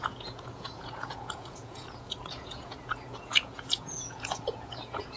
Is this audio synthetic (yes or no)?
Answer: yes